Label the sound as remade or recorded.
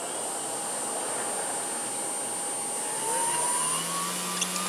recorded